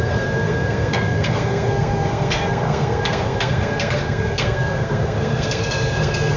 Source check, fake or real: fake